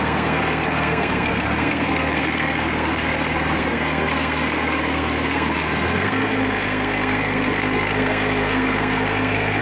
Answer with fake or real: fake